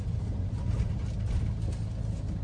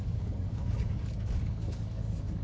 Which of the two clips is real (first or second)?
first